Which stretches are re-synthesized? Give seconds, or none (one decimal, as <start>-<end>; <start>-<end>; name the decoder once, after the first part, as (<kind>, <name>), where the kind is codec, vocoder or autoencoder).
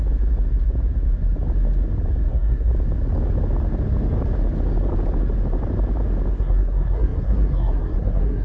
2.3-2.7 (codec, SNAC); 6.3-8.4